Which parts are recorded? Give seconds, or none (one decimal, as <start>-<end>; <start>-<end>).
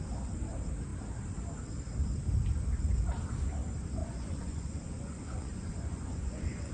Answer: 0.0-4.0